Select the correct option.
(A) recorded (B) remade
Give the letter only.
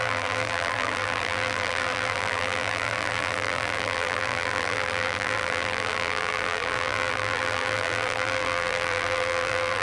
B